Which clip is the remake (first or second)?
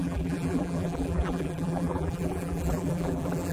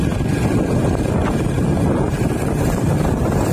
first